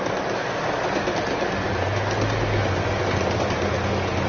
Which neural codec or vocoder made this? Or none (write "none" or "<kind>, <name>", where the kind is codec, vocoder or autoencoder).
none